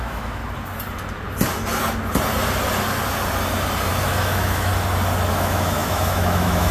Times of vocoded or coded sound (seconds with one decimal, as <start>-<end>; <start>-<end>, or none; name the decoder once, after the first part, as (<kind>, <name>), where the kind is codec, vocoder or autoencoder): 0.0-0.4 (autoencoder, DAC-VAE); 3.9-4.7; 5.3-6.7